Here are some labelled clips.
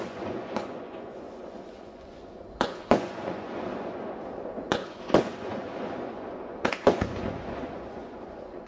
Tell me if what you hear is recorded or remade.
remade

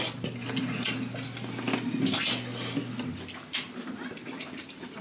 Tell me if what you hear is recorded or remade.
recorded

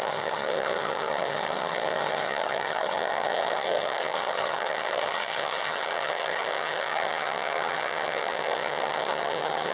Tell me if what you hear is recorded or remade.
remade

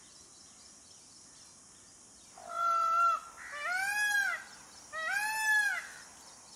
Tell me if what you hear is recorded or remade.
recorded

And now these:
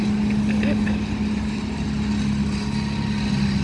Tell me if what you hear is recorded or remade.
recorded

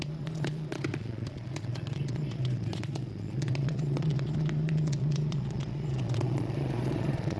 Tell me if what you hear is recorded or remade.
remade